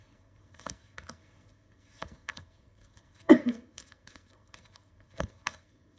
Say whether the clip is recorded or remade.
remade